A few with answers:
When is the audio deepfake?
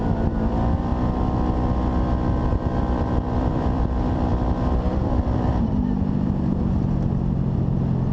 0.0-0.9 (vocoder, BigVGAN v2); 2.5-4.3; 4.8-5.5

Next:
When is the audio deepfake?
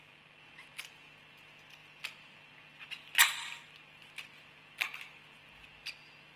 none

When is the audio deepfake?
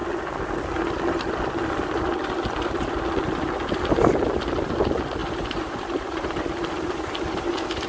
5.2-6.4 (vocoder, BigVGAN v2)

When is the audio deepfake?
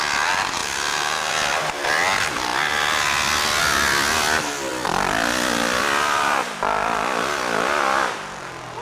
none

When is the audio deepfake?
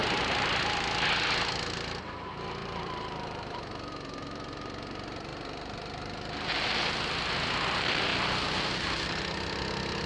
0.0-0.6 (vocoder, BigVGAN v2); 2.6-3.6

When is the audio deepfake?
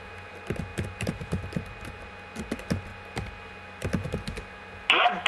none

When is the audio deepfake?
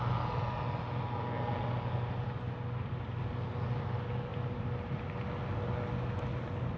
none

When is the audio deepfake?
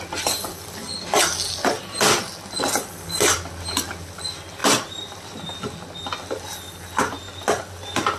none